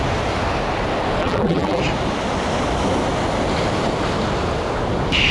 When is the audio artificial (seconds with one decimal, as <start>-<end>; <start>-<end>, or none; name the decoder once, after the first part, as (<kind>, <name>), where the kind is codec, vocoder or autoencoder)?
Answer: 1.2-1.8 (vocoder, BigVGAN v2)